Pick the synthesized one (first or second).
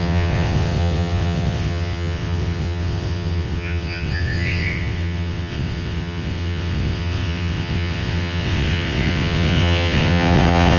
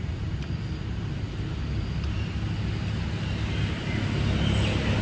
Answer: first